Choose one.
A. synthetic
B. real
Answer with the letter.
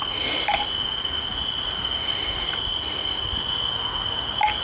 B